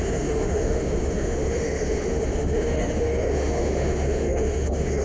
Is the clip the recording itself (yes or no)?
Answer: no